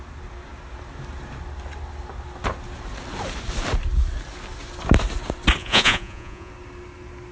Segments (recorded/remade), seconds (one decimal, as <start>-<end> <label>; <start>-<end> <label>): 0.0-5.6 recorded; 5.6-6.5 remade; 6.5-7.3 recorded